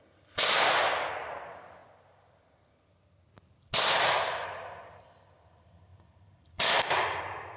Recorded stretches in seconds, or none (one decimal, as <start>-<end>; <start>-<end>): 0.0-5.9; 6.7-7.6